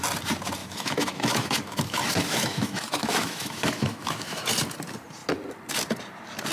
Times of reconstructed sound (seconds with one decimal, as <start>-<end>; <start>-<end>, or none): 0.6-4.5